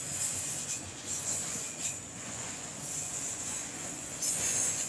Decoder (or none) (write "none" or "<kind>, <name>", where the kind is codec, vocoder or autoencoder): vocoder, Vocos